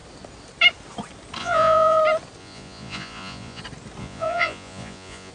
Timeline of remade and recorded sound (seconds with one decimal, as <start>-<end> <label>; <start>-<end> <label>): 0.0-1.4 recorded; 1.4-2.0 remade; 2.0-2.4 recorded; 2.4-3.6 remade; 3.6-4.0 recorded; 4.0-5.3 remade